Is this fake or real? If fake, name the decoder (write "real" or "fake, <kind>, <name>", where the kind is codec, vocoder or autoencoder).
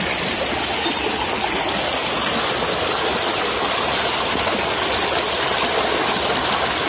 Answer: real